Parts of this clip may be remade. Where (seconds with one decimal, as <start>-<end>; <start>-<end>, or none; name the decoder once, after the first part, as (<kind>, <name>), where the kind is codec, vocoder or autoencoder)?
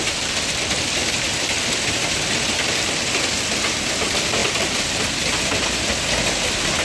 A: none